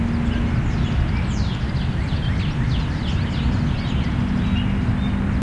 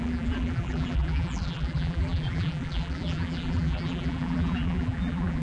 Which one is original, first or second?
first